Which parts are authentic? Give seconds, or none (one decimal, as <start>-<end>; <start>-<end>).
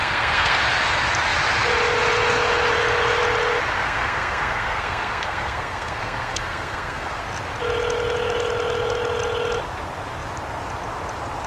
0.6-3.8; 7.2-11.5